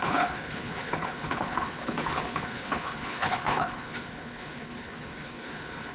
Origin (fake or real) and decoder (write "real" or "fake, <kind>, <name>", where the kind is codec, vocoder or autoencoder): fake, codec, HILCodec